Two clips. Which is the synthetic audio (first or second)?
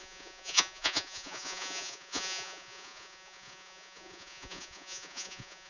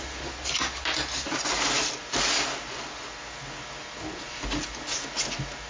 first